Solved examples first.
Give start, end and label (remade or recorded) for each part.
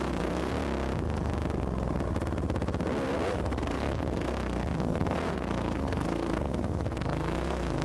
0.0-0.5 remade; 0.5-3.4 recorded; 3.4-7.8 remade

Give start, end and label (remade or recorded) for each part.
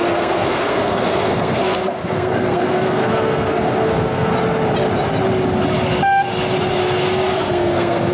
0.0-4.3 remade; 4.3-7.0 recorded; 7.0-8.1 remade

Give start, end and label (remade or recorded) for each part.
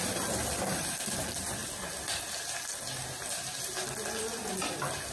0.0-5.1 recorded